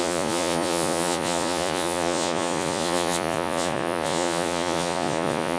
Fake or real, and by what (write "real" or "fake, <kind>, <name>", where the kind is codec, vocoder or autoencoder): fake, vocoder, Vocos